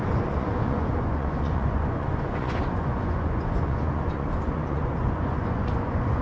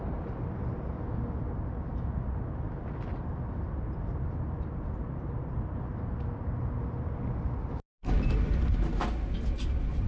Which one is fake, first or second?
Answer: first